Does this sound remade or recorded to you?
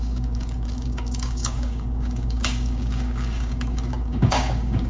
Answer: remade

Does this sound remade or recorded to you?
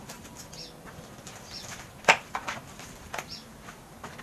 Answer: recorded